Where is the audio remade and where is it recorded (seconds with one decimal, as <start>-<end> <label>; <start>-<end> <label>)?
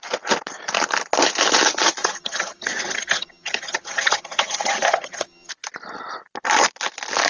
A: 0.0-2.0 recorded; 2.0-5.5 remade; 5.5-7.3 recorded